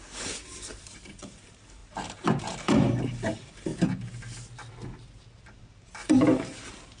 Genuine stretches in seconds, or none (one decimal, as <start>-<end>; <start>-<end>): 1.8-2.4; 3.7-5.4